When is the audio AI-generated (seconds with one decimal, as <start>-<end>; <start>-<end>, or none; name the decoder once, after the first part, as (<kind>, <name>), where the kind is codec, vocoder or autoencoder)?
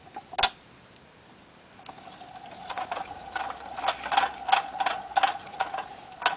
2.6-3.4 (vocoder, Vocos); 5.3-5.9